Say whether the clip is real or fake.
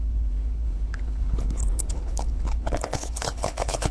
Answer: fake